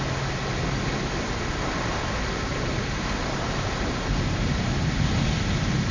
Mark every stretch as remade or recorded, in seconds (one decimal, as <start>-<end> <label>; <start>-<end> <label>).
0.0-1.9 recorded; 1.9-5.1 remade; 5.1-5.9 recorded